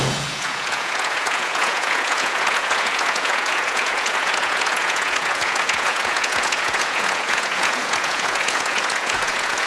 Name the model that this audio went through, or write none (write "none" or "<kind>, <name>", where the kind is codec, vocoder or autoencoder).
vocoder, Vocos